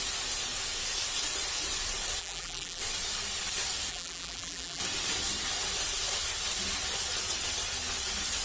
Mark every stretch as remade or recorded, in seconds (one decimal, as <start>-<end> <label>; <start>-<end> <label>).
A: 0.0-2.2 recorded; 2.2-2.8 remade; 2.8-3.9 recorded; 3.9-4.8 remade; 4.8-8.4 recorded

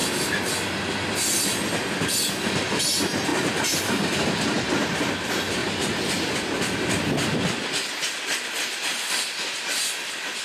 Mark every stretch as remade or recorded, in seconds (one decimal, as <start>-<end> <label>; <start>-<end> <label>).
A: 0.0-3.3 recorded; 3.3-4.7 remade; 4.7-5.6 recorded; 5.6-6.2 remade; 6.2-10.4 recorded